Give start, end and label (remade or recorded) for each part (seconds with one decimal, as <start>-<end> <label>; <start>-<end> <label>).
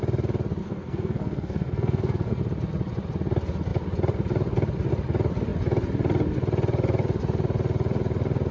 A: 0.0-0.6 recorded; 0.6-2.4 remade; 2.4-8.5 recorded